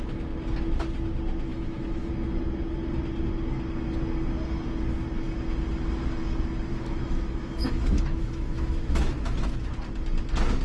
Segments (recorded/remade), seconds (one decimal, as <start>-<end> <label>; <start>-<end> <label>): 0.0-1.5 recorded; 1.5-2.1 remade; 2.1-6.7 recorded; 6.7-9.7 remade; 9.7-10.6 recorded